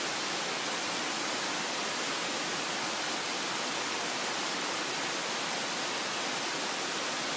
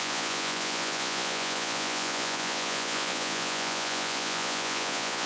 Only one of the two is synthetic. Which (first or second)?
second